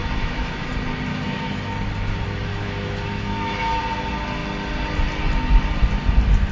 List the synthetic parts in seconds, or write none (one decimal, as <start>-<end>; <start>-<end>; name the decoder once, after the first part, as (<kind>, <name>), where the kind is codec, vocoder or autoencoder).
0.0-0.7 (autoencoder, DAC-VAE); 1.1-1.9; 2.5-3.8